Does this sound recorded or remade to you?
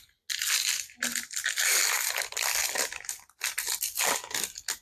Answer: recorded